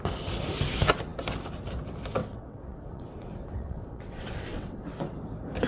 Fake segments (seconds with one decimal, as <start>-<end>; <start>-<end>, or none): 2.2-4.8